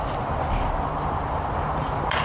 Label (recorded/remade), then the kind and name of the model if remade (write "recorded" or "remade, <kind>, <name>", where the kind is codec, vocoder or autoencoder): recorded